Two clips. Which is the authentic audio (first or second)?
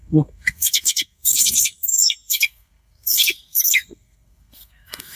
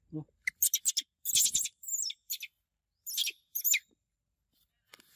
second